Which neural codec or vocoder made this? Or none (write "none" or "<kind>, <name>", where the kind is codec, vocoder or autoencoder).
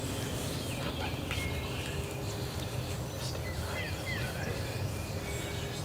none